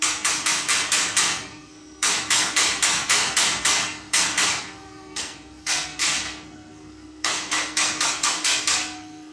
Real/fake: fake